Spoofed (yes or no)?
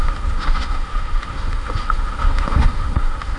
yes